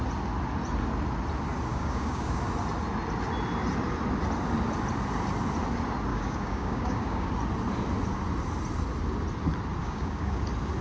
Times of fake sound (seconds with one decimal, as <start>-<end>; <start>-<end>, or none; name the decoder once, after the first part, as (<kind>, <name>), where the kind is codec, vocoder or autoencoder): 1.7-2.4 (codec, DAC); 6.1-7.3; 9.8-10.4